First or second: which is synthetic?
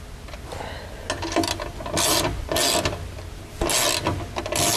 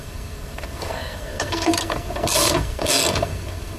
second